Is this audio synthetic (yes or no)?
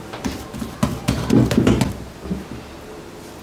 no